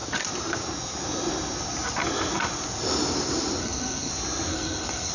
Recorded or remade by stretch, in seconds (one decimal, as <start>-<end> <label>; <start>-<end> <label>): 0.0-3.6 recorded; 3.6-4.1 remade; 4.1-4.5 recorded; 4.5-5.1 remade